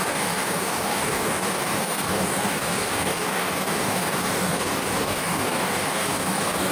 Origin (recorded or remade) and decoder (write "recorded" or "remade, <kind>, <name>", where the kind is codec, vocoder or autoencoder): remade, codec, DAC